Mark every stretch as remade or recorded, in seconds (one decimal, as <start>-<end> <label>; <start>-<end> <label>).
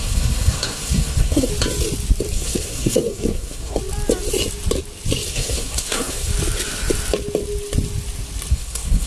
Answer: 0.0-1.5 remade; 1.5-2.3 recorded; 2.3-3.8 remade; 3.8-5.3 recorded; 5.3-6.3 remade; 6.3-8.5 recorded; 8.5-9.1 remade